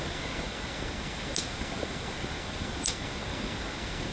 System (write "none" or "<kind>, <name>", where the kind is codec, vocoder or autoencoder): codec, SNAC